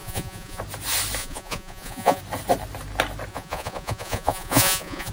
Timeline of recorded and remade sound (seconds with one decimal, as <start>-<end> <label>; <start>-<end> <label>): 0.0-0.6 remade; 0.6-1.2 recorded; 1.2-2.2 remade; 2.2-3.3 recorded; 3.3-5.1 remade